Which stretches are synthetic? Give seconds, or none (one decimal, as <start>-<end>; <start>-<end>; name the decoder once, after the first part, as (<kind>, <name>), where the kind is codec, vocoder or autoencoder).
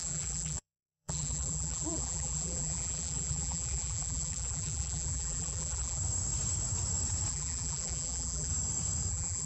0.0-6.0 (vocoder, BigVGAN v2); 7.3-8.5; 9.1-9.5